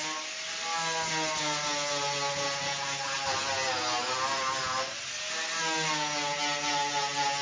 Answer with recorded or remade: recorded